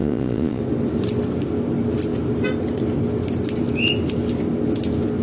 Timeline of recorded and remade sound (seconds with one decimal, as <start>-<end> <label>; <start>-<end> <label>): 0.0-0.6 remade; 0.6-5.2 recorded